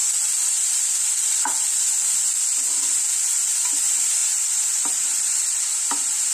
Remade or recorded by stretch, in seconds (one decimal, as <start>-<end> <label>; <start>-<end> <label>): 0.0-4.2 recorded; 4.2-6.3 remade